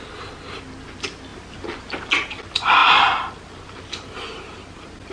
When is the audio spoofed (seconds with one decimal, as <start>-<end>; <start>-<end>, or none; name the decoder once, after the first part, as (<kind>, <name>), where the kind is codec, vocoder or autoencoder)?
none